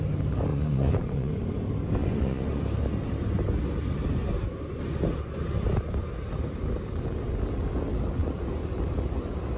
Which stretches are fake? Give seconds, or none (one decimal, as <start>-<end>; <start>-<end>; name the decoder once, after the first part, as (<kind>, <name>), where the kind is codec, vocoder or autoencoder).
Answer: 0.5-1.3 (vocoder, Vocos); 2.0-2.6